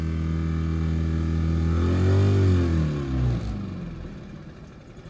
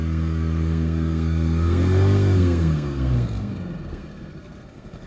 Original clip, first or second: first